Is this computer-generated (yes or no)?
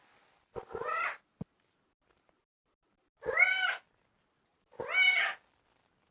no